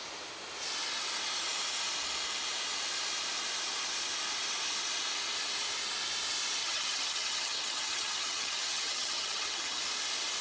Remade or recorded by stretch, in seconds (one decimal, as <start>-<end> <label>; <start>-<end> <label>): 0.0-6.6 recorded; 6.6-9.8 remade; 9.8-10.4 recorded